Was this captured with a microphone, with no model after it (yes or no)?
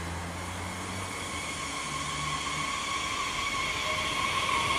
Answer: yes